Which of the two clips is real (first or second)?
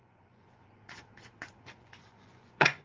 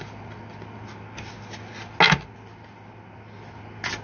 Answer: second